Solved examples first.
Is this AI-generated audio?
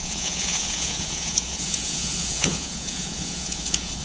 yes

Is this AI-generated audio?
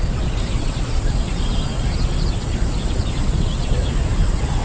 yes